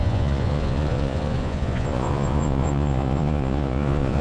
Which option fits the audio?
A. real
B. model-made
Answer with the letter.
B